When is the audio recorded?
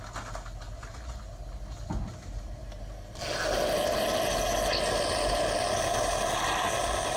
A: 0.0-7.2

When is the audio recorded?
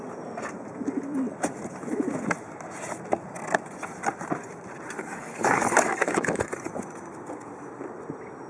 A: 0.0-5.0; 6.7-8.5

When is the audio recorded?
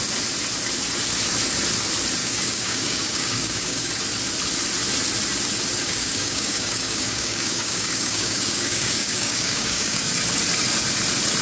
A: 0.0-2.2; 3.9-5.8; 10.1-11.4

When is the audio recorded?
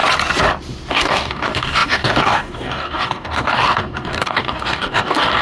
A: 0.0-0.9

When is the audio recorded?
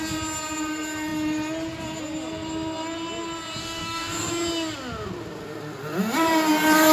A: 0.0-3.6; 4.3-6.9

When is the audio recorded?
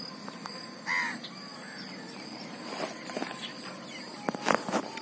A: 0.0-5.0